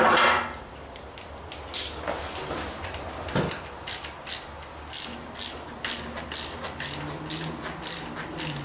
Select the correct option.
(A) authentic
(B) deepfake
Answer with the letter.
A